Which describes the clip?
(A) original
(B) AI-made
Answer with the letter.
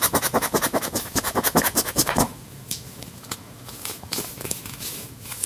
B